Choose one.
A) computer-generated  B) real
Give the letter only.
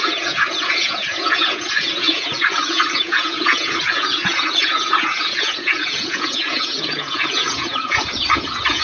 A